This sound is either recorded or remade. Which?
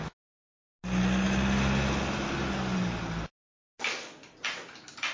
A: recorded